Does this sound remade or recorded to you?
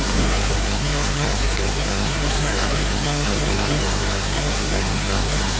remade